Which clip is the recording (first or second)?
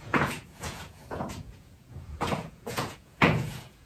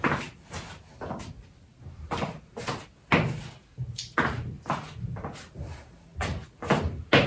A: second